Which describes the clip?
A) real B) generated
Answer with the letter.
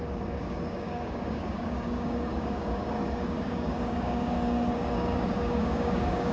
B